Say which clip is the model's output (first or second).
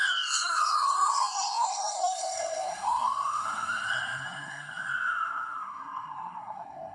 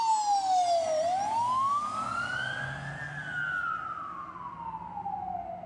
first